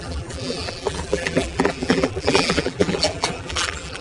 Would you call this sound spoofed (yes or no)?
yes